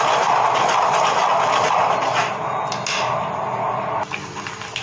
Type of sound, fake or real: real